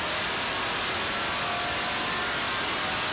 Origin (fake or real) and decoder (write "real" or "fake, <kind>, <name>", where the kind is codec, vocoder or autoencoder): real